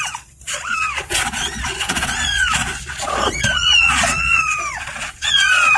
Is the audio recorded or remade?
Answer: remade